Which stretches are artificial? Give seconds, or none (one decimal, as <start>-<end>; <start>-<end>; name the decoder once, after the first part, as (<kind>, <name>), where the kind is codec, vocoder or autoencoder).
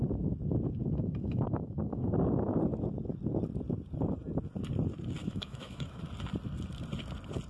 0.8-2.6 (autoencoder, DAC-VAE); 5.2-6.0